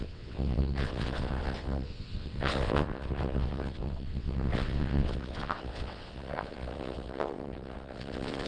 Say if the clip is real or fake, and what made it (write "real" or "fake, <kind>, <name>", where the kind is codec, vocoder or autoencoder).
fake, vocoder, WaveNeXt